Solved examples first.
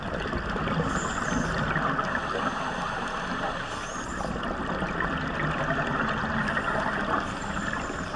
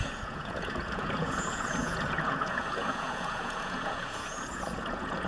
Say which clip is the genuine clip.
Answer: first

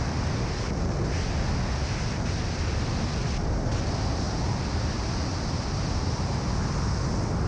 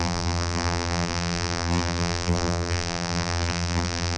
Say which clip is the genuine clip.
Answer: first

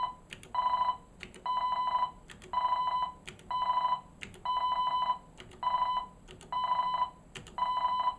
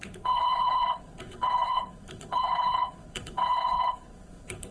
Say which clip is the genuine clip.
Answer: first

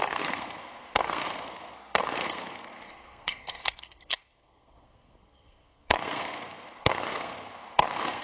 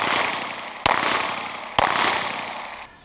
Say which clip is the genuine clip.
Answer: second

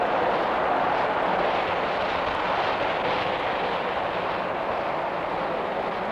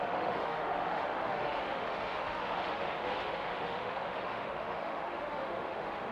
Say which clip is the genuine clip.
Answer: first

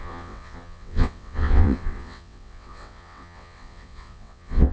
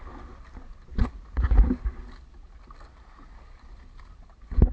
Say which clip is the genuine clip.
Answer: second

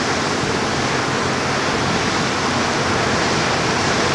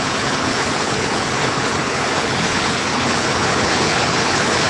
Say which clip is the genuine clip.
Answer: first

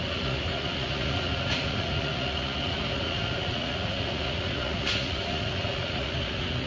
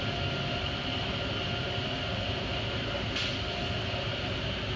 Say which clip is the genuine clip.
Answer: second